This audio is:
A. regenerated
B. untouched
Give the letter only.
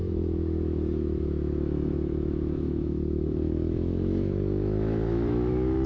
A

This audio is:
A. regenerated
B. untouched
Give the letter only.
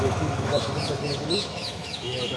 A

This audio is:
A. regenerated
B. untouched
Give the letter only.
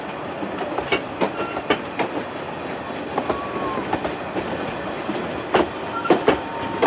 B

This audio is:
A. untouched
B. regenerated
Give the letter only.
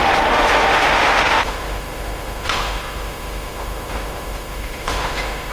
B